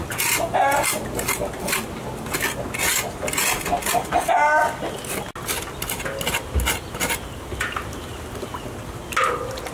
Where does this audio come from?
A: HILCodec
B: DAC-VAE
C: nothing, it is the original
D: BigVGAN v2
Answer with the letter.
C